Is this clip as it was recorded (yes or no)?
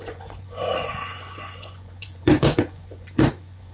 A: no